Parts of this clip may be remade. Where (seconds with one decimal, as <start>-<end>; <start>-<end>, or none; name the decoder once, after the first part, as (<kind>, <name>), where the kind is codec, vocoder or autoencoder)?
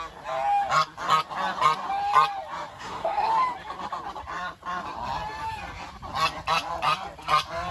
2.7-3.3 (codec, SNAC)